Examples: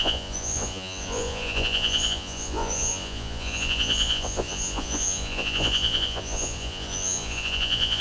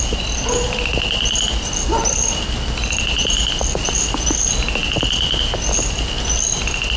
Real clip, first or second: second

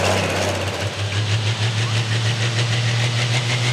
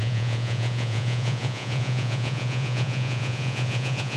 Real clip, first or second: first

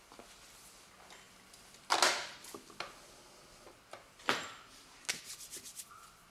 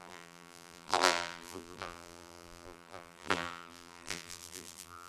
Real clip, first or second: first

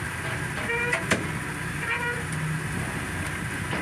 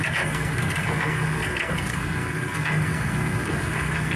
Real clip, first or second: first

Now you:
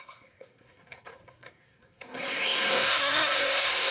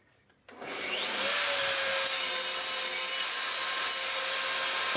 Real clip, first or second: second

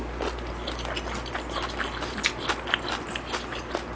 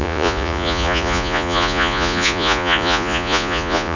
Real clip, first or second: first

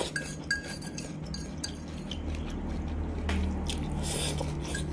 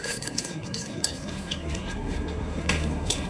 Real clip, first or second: first